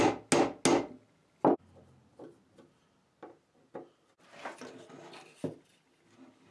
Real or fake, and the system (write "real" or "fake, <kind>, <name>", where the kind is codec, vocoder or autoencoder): real